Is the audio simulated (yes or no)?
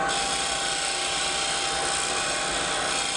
no